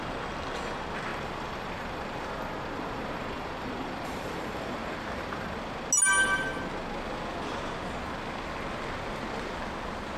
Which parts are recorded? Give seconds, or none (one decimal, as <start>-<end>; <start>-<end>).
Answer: 0.0-1.1; 5.6-10.2